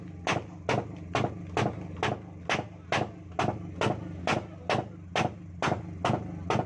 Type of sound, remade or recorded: recorded